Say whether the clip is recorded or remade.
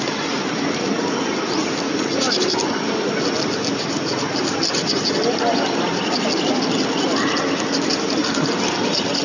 recorded